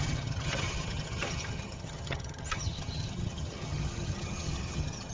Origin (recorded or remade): remade